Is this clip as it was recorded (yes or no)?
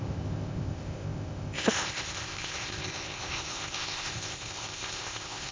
no